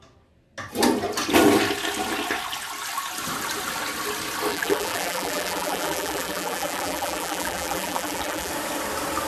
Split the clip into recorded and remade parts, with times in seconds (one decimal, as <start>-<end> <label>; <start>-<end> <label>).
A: 0.0-4.5 recorded; 4.5-8.5 remade; 8.5-9.3 recorded